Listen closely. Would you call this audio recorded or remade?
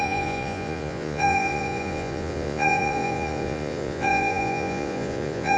remade